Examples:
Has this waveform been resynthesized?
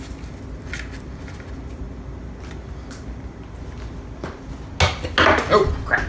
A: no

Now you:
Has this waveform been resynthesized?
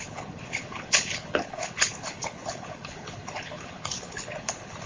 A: yes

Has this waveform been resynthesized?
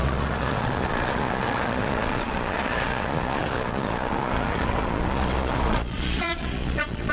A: yes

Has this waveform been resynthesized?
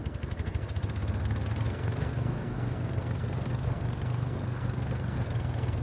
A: yes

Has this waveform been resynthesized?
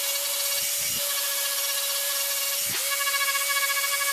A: no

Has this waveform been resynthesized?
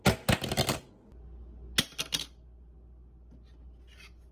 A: no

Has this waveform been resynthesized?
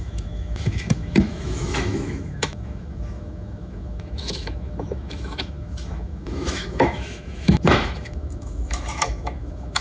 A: yes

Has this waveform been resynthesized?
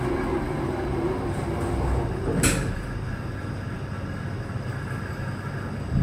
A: no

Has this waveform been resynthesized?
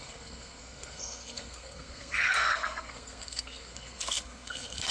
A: yes